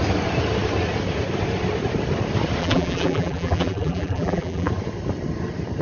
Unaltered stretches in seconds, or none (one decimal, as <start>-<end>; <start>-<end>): 0.0-2.6; 4.7-5.8